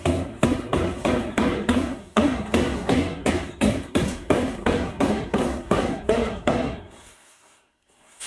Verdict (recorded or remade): remade